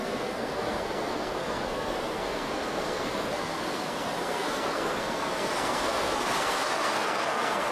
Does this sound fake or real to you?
fake